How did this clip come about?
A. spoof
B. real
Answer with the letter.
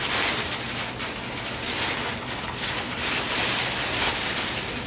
B